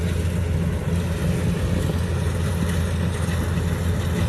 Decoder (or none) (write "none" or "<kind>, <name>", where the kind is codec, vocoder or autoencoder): none